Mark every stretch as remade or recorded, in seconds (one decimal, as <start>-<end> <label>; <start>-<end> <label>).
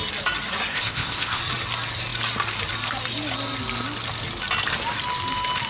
0.0-0.7 recorded; 0.7-1.4 remade; 1.4-5.7 recorded